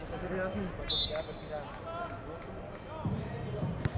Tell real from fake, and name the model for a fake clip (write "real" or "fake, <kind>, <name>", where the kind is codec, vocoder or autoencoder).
real